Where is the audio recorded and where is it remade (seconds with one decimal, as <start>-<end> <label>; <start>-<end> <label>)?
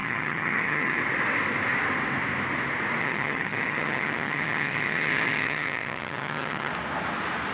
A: 0.0-1.0 remade; 1.0-3.0 recorded; 3.0-6.7 remade; 6.7-7.5 recorded